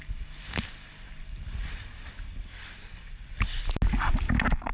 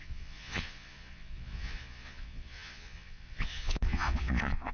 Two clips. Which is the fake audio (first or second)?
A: second